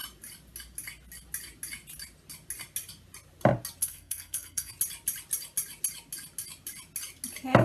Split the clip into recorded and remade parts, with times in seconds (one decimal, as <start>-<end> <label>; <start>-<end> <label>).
0.0-3.8 recorded; 3.8-4.7 remade; 4.7-7.6 recorded